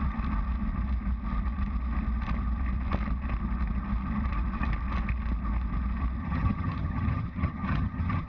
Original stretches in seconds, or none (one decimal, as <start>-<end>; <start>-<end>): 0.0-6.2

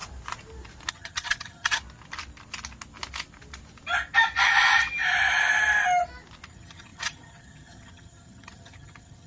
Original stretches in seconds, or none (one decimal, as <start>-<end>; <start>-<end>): 0.0-0.9; 1.8-6.5

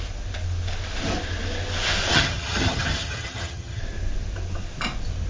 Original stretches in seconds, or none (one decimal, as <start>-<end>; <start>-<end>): 0.0-2.1; 3.8-5.3

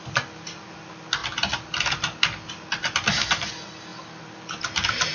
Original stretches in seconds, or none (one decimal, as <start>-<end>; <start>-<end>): 0.0-5.1

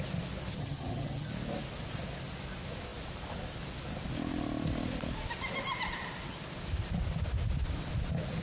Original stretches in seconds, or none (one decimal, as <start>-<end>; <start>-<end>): 0.0-0.5; 1.3-8.4

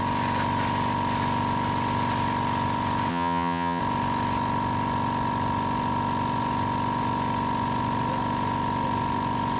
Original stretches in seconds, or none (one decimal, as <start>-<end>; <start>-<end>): 0.0-3.1; 3.8-9.6

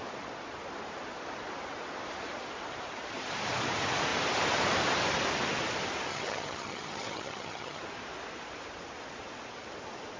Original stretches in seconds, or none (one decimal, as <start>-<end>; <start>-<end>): 0.0-6.1; 7.8-10.2